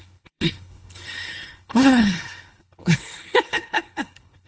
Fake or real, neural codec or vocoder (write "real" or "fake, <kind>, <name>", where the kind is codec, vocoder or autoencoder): fake, codec, HILCodec